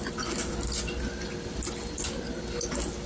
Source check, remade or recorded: recorded